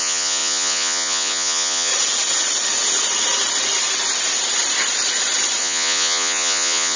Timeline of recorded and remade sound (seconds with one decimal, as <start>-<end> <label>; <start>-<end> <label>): 0.0-1.9 remade; 1.9-5.6 recorded; 5.6-7.0 remade